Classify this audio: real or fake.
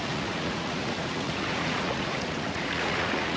fake